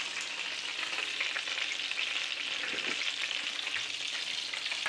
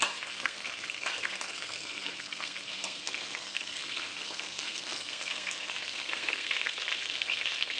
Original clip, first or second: first